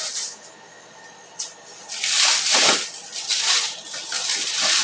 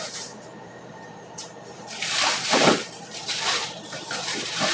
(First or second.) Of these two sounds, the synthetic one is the second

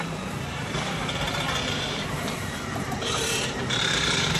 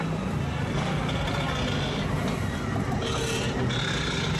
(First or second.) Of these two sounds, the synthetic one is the first